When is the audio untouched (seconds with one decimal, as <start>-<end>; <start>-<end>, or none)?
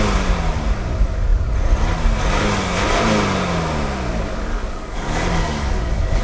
0.0-4.5